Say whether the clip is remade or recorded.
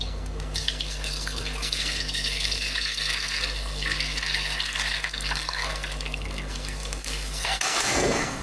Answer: remade